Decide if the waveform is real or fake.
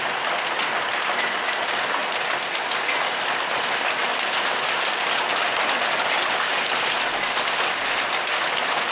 real